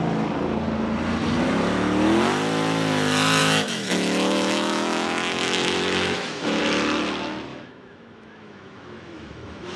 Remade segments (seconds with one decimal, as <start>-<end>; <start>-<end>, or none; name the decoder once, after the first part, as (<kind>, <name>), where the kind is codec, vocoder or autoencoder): 3.4-6.6 (autoencoder, DAC-VAE); 7.5-9.8